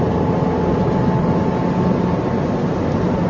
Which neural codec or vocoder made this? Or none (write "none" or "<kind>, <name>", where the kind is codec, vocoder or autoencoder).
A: none